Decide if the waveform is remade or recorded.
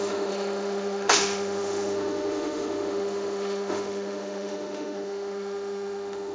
remade